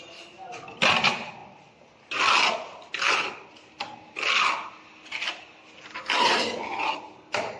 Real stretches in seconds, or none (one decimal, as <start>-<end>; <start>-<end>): 0.0-7.6